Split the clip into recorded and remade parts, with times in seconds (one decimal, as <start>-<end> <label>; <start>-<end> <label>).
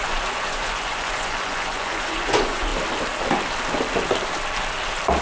0.0-2.7 remade; 2.7-5.2 recorded